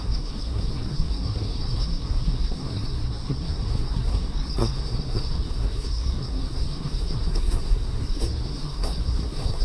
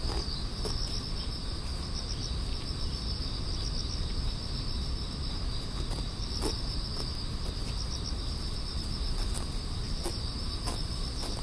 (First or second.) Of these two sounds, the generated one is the first